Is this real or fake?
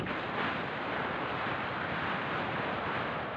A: real